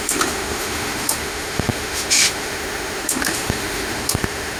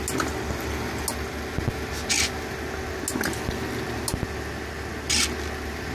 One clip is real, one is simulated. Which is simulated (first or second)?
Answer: first